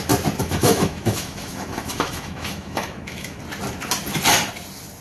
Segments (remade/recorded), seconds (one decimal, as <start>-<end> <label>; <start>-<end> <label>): 0.0-0.4 recorded; 0.4-3.4 remade; 3.4-5.0 recorded